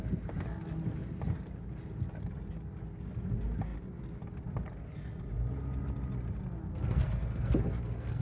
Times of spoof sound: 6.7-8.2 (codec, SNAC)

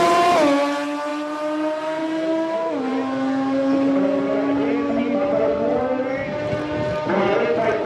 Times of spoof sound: none

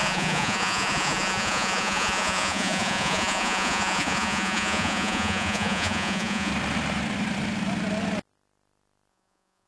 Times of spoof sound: 0.0-6.5 (vocoder, Vocos); 9.1-9.7

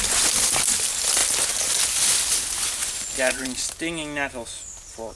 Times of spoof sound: 2.8-3.6 (vocoder, Vocos)

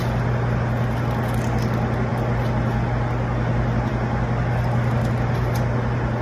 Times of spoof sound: none